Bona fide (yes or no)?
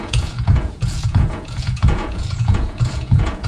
no